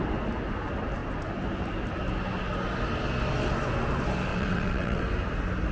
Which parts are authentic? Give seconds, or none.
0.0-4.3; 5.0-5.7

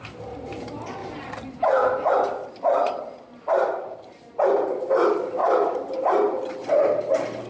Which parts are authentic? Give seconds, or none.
0.0-1.0; 2.1-5.4; 6.2-7.5

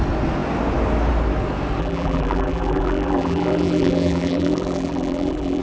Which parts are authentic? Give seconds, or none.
0.0-1.8

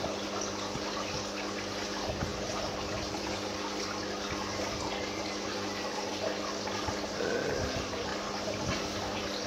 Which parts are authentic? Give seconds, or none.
0.0-9.5